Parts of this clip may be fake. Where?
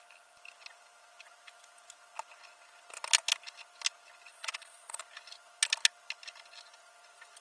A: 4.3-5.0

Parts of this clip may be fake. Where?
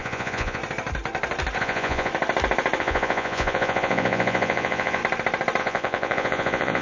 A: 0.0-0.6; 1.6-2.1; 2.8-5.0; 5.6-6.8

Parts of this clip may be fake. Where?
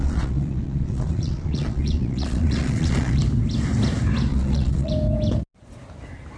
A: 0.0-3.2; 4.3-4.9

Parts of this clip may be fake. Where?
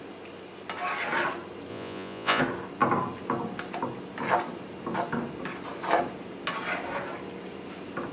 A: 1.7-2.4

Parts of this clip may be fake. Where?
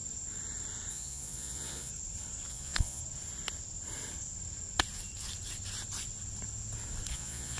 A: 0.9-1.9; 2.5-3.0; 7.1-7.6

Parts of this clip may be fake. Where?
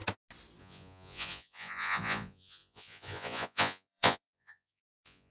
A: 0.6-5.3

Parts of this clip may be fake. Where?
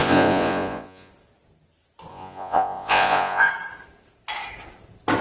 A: 0.0-1.1; 2.1-3.5